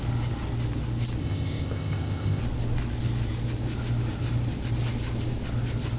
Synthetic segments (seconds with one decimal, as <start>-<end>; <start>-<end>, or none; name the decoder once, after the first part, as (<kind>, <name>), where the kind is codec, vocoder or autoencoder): 1.2-2.4 (codec, ZipCodec)